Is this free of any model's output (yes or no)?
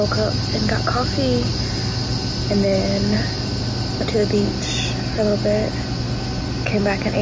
yes